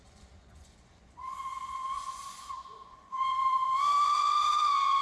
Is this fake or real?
fake